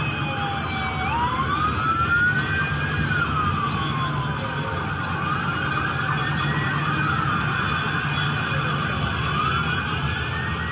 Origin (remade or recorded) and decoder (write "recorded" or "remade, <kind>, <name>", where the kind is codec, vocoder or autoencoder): recorded